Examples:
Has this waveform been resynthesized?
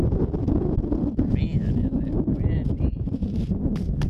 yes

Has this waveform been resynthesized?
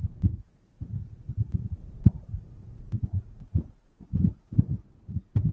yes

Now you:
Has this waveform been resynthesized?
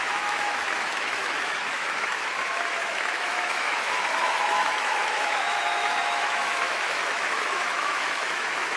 yes